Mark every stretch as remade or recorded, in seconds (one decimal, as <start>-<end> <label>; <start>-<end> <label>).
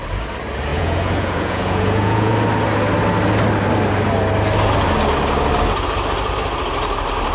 0.0-0.7 recorded; 0.7-2.3 remade; 2.3-7.3 recorded